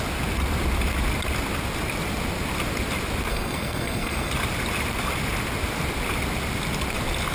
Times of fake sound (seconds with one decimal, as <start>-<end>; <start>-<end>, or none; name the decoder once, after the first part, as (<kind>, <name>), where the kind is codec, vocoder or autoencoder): 3.3-4.3 (codec, SNAC)